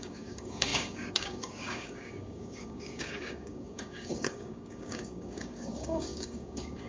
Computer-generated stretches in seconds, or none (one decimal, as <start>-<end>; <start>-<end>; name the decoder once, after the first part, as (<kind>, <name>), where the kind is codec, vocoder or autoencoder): 0.0-6.9 (codec, DAC)